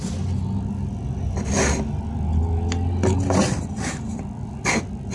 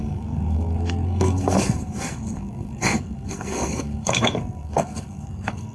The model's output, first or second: second